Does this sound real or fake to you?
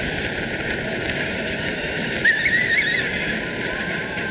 real